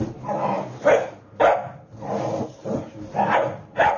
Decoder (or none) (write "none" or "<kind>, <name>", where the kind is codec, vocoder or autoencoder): none